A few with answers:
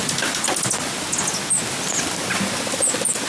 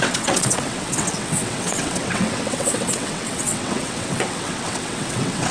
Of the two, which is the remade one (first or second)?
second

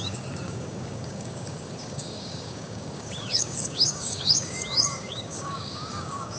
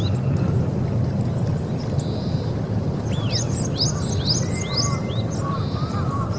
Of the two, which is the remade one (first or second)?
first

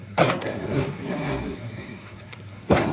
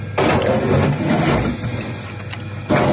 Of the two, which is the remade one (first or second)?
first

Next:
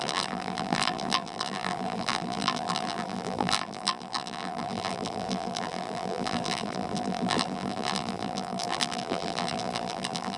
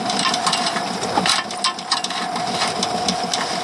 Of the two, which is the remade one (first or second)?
first